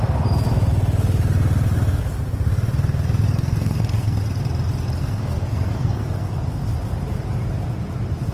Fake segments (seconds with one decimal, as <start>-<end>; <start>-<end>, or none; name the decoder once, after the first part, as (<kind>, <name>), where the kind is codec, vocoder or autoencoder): 3.3-4.2 (codec, SNAC); 5.0-6.3